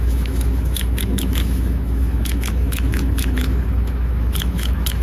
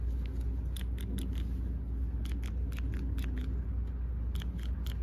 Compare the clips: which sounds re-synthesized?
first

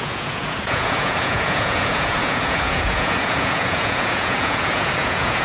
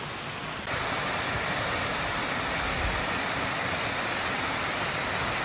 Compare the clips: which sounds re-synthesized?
first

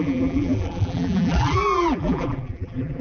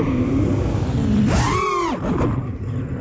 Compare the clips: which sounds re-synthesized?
first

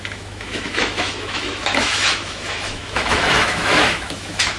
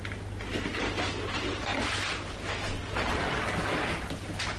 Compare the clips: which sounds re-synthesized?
first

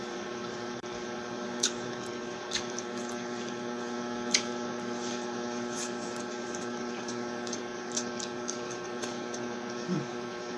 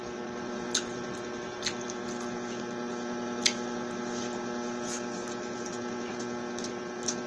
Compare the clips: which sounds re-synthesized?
first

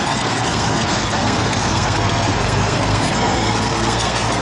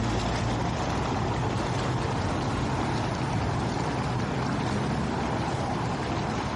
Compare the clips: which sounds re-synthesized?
first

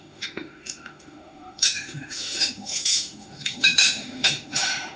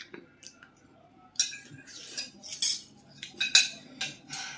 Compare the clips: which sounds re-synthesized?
first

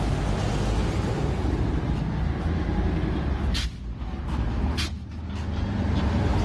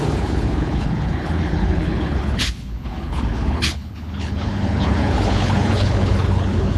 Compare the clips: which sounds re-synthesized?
second